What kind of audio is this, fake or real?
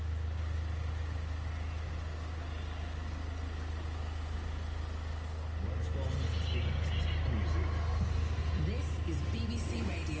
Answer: real